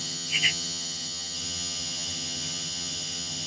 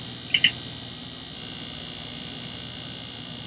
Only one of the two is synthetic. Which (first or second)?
first